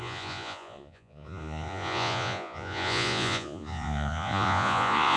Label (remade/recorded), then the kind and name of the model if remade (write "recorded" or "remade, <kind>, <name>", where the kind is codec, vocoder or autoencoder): remade, vocoder, Vocos